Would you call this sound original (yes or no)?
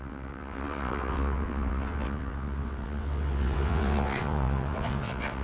no